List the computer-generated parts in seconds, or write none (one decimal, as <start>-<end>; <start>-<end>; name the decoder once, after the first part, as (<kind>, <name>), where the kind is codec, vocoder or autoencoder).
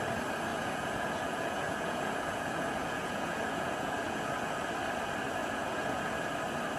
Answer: 0.5-4.6 (vocoder, Vocos); 5.4-6.3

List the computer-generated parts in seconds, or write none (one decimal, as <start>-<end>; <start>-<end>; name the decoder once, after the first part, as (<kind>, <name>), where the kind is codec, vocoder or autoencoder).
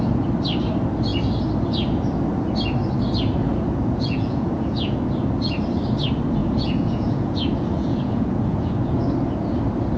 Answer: 3.4-5.0 (vocoder, Vocos); 6.4-9.0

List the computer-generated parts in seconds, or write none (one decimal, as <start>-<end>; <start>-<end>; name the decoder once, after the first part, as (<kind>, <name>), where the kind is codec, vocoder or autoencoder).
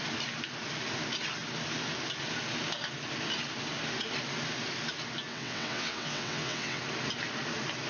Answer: 5.3-6.8 (vocoder, WaveNeXt)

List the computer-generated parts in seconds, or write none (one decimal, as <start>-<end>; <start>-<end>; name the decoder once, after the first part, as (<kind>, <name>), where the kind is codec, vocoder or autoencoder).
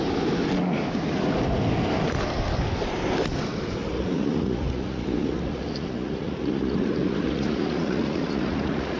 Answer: 3.8-9.0 (vocoder, Vocos)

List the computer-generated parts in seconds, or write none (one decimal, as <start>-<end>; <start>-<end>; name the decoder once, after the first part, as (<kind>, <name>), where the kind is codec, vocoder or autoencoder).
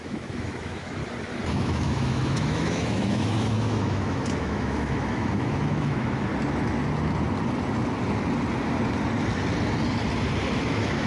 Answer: 0.0-1.0 (autoencoder, DAC-VAE); 1.5-6.3; 10.6-11.1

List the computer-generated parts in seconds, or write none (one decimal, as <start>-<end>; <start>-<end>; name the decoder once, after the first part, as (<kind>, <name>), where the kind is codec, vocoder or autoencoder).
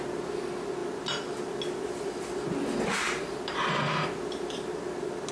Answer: none